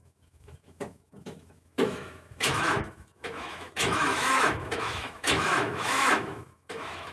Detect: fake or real fake